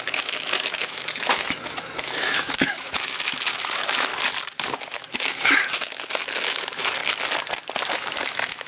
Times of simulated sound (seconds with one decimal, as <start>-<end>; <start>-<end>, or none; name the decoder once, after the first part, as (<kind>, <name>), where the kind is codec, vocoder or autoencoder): 0.0-4.1 (autoencoder, DAC-VAE); 4.8-7.0; 7.9-8.7